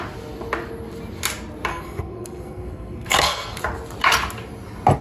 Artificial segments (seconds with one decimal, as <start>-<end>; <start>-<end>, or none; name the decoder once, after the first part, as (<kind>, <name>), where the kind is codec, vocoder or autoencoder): 1.7-3.6 (codec, SNAC)